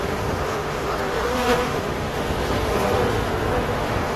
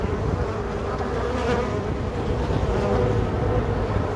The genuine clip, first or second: second